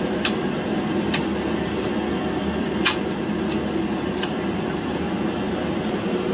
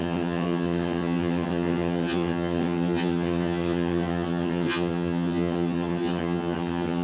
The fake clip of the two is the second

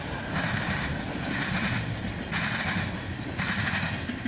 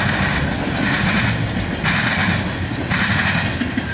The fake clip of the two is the first